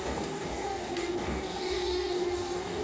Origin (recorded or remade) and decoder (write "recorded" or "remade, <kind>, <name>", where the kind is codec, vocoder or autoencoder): remade, codec, DAC